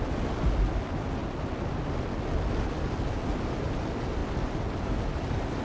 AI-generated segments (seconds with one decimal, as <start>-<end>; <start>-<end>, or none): none